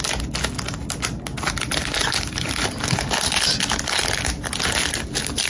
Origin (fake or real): real